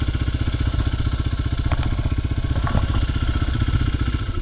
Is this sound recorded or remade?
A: recorded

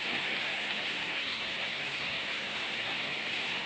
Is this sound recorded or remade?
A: remade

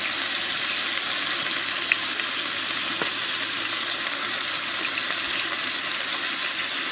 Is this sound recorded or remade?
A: recorded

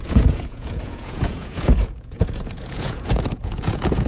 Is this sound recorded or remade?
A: remade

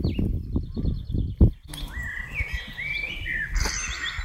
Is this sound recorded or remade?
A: recorded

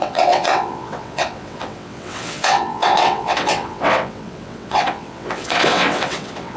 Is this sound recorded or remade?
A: remade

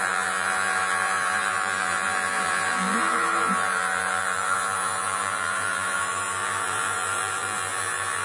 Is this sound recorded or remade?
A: remade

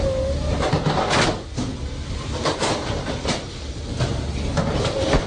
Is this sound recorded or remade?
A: recorded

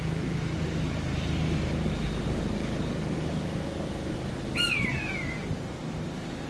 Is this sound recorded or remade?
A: recorded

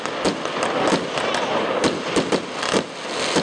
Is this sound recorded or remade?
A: recorded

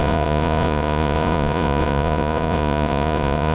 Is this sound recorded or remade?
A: remade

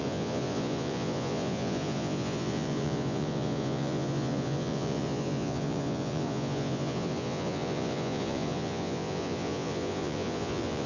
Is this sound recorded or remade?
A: remade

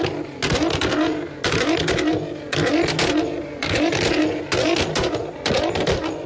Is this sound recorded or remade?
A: recorded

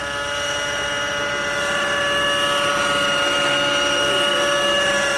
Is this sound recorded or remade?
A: recorded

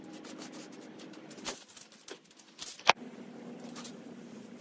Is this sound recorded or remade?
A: recorded